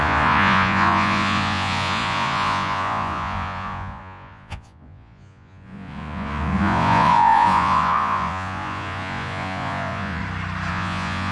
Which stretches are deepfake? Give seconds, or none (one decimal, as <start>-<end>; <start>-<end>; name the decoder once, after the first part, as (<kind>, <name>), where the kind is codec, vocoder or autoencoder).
0.0-10.2 (vocoder, Vocos); 10.7-11.3